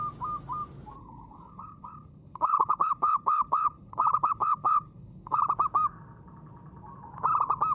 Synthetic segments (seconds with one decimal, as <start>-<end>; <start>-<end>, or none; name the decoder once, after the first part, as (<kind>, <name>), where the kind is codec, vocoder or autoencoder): 1.0-5.4 (codec, HILCodec)

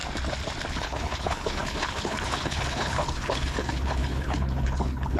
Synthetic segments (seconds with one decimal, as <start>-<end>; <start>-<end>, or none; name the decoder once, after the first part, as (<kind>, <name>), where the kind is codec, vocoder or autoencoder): 0.7-5.2 (codec, HILCodec)

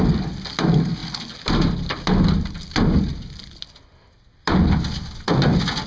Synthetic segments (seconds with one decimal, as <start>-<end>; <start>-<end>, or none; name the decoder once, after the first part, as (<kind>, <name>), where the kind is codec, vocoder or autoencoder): none

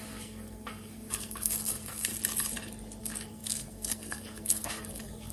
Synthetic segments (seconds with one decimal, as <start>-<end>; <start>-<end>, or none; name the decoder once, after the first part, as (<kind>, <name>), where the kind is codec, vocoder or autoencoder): 0.0-2.1 (codec, SNAC); 3.0-5.3